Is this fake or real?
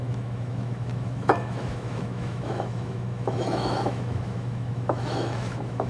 fake